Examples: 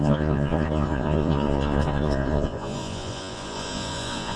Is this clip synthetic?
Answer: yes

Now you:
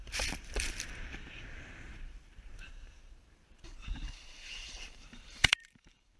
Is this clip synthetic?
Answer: yes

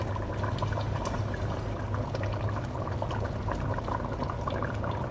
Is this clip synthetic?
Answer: no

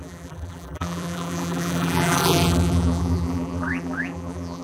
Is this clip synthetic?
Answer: yes